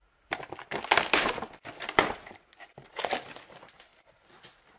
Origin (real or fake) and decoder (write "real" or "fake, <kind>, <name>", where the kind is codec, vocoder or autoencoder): real